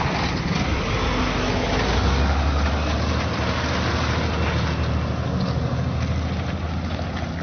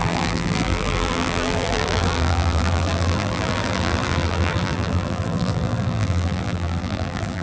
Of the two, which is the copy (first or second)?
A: second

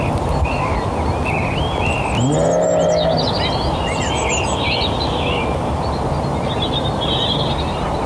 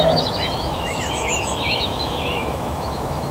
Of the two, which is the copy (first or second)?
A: second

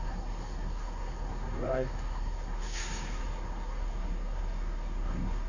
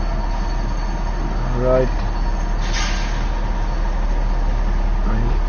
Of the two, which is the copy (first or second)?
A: first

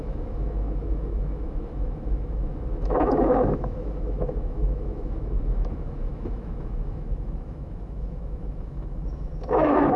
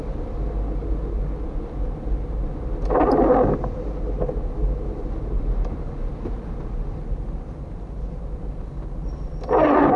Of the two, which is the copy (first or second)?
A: first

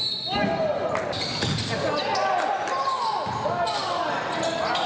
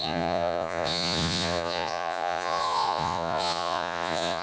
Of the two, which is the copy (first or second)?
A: second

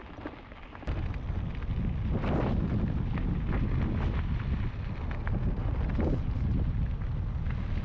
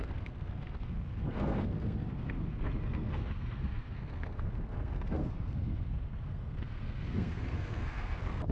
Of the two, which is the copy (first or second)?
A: second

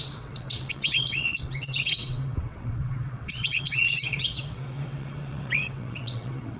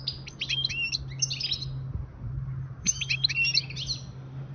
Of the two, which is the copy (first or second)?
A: first